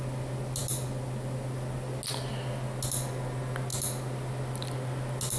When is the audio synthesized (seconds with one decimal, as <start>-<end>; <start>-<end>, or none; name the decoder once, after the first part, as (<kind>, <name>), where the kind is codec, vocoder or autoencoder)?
none